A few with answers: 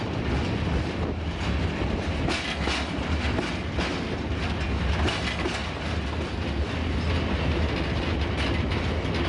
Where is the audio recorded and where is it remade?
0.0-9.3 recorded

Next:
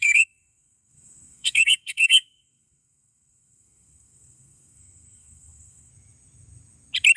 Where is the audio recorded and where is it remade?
0.0-5.9 remade; 5.9-7.2 recorded

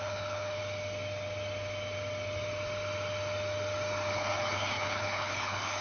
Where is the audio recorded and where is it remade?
0.0-0.6 remade; 0.6-4.1 recorded; 4.1-5.8 remade

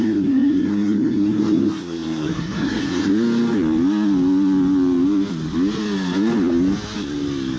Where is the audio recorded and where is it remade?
0.0-3.1 remade; 3.1-7.6 recorded

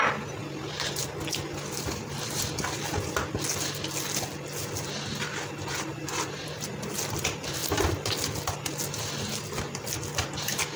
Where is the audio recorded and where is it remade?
0.0-5.9 recorded; 5.9-6.9 remade; 6.9-10.8 recorded

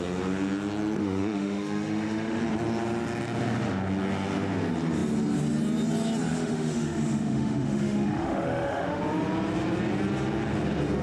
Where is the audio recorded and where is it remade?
0.0-1.0 recorded; 1.0-2.4 remade; 2.4-6.3 recorded; 6.3-9.0 remade; 9.0-11.0 recorded

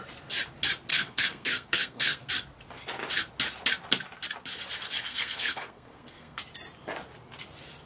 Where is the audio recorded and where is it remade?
0.0-0.9 recorded; 0.9-2.3 remade; 2.3-5.0 recorded; 5.0-6.4 remade; 6.4-7.9 recorded